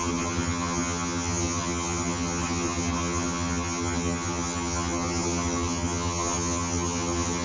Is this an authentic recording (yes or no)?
no